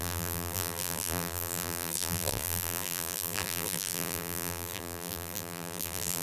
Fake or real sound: fake